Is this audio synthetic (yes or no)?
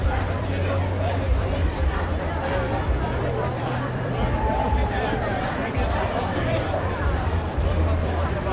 yes